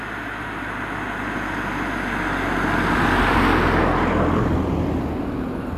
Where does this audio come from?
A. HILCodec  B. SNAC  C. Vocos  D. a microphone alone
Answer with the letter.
D